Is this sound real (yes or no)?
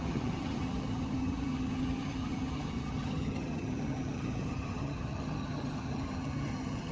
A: no